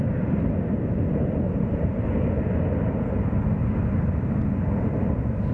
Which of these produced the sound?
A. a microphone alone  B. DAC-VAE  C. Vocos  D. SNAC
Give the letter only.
A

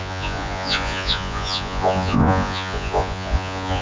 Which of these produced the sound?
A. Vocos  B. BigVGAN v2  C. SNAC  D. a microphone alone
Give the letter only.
A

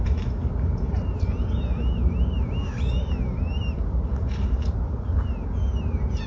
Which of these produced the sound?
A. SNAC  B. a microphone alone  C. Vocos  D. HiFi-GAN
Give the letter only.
B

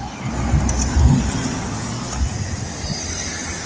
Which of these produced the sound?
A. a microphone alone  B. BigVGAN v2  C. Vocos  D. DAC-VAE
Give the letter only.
A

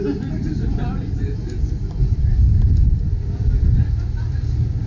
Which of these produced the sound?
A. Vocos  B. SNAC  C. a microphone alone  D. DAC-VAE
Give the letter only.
C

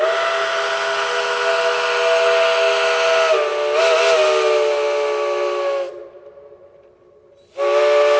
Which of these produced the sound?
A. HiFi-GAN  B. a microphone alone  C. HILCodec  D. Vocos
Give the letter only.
B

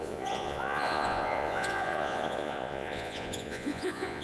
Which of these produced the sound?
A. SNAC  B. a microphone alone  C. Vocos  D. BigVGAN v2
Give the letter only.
C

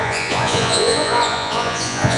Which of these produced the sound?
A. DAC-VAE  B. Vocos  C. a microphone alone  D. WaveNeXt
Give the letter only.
B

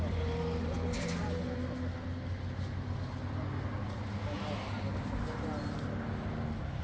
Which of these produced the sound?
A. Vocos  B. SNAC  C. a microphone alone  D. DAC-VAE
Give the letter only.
C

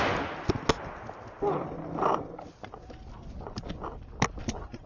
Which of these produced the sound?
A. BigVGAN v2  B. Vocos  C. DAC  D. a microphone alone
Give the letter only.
D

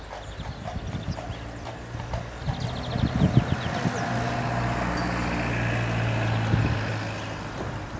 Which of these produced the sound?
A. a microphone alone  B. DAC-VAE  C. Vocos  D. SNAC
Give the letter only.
A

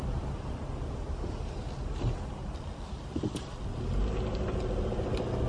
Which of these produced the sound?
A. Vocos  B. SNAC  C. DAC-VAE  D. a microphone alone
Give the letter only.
D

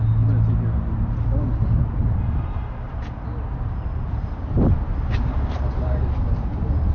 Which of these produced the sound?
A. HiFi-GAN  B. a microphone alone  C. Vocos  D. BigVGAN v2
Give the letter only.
B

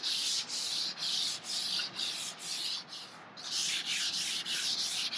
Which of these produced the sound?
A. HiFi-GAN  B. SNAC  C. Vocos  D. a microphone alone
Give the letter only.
D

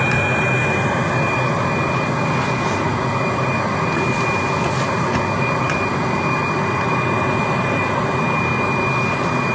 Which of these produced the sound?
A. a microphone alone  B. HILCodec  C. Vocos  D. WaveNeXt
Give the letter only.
A